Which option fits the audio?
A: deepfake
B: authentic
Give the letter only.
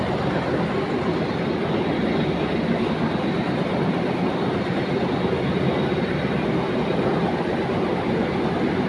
B